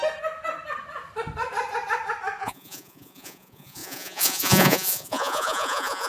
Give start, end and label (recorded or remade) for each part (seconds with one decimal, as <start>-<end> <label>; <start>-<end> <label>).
0.0-2.4 recorded; 2.4-6.1 remade